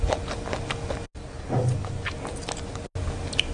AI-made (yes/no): no